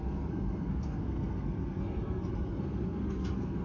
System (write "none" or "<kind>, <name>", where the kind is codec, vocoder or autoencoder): codec, SNAC